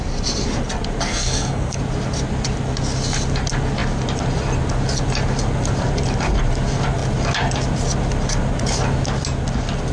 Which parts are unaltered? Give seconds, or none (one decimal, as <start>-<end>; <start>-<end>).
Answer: 0.0-1.1; 1.8-9.9